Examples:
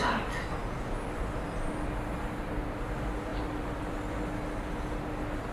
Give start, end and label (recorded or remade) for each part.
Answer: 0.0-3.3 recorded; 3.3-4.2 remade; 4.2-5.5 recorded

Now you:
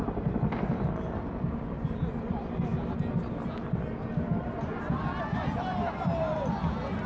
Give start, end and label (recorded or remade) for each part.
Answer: 0.0-7.1 recorded

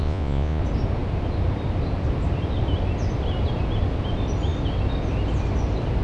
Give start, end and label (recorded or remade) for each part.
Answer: 0.0-0.6 remade; 0.6-6.0 recorded

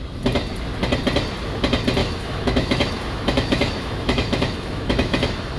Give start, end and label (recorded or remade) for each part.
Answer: 0.0-2.0 recorded; 2.0-5.6 remade

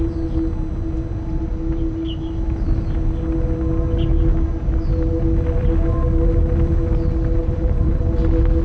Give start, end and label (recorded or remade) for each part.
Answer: 0.0-7.4 recorded; 7.4-8.0 remade; 8.0-8.6 recorded

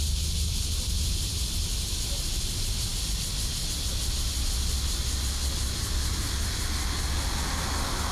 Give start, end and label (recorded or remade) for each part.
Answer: 0.0-8.1 recorded

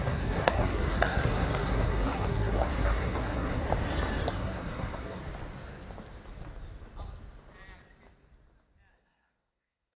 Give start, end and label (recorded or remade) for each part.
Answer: 0.0-3.7 remade; 3.7-4.3 recorded; 4.3-5.2 remade; 5.2-8.9 recorded; 8.9-10.0 remade

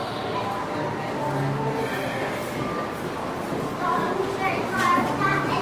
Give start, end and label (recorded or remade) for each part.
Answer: 0.0-1.2 remade; 1.2-4.6 recorded; 4.6-5.6 remade